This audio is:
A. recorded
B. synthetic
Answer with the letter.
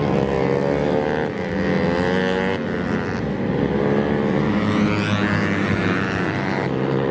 A